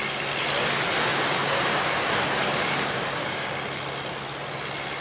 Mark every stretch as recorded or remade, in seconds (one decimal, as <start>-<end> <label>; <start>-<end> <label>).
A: 0.0-1.1 recorded; 1.1-1.8 remade; 1.8-2.5 recorded; 2.5-3.5 remade; 3.5-5.0 recorded